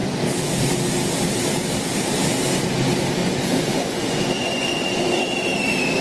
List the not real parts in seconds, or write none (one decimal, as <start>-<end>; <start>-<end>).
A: 3.2-5.2